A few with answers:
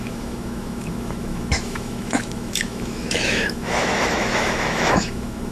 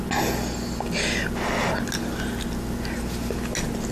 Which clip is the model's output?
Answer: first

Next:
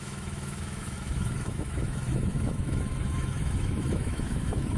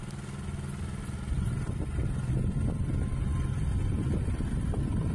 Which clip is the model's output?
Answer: first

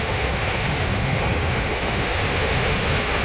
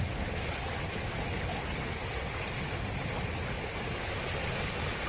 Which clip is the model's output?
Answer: first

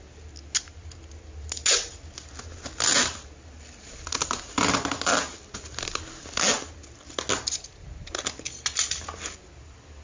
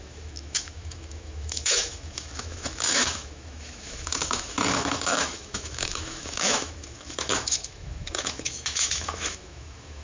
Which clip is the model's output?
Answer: second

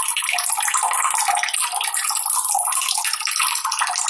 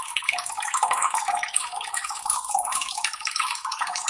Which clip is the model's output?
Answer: second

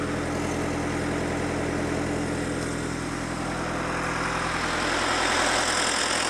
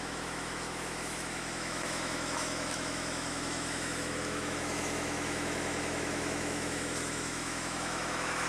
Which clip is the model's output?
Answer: second